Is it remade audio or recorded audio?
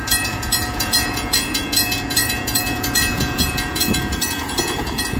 remade